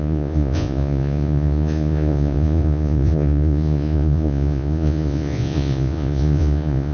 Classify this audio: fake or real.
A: fake